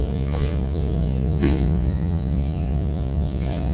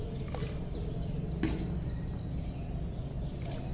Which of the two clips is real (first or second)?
second